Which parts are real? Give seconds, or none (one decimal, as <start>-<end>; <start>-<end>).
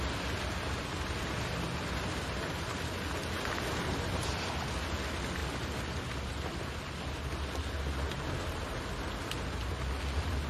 0.0-10.5